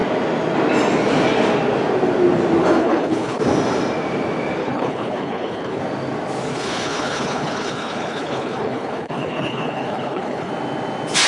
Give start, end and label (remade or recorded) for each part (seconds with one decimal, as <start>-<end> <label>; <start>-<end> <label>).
0.0-2.8 recorded; 2.8-3.4 remade; 3.4-4.6 recorded; 4.6-5.8 remade; 5.8-6.5 recorded; 6.5-10.5 remade; 10.5-11.3 recorded